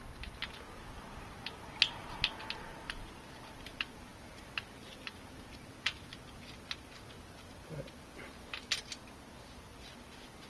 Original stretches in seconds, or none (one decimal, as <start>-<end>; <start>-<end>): 0.0-10.5